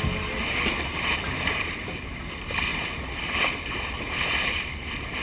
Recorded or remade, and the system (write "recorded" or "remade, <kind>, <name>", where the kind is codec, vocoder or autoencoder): recorded